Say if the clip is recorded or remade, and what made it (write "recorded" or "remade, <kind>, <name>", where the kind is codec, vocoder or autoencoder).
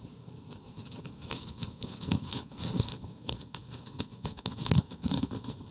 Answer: remade, codec, SNAC